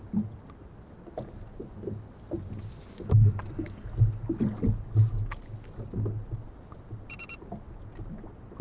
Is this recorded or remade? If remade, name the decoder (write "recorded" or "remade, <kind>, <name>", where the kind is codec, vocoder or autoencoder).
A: recorded